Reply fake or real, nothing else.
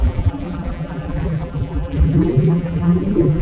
fake